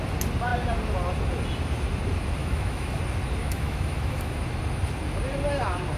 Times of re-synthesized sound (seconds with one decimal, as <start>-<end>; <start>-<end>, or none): 2.4-3.0; 3.4-4.4